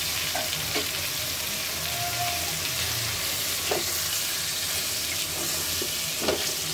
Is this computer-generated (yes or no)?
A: no